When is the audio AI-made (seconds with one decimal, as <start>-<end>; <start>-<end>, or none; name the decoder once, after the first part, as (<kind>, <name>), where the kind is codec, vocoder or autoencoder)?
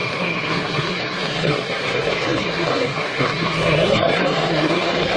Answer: 0.0-5.2 (codec, SNAC)